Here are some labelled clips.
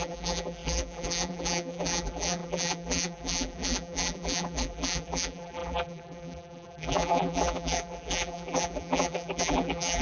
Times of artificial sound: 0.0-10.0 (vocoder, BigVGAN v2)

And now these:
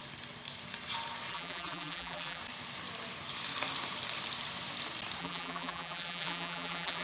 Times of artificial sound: 1.3-2.4 (vocoder, BigVGAN v2); 5.2-7.0

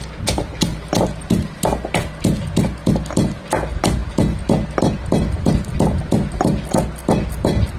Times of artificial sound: 0.7-1.6 (vocoder, BigVGAN v2)